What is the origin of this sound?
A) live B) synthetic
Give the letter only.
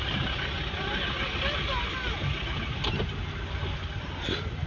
A